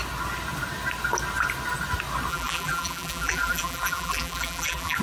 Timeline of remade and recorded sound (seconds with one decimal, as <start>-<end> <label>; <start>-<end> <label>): 0.0-2.3 recorded; 2.3-5.0 remade